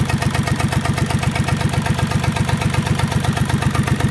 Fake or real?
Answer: real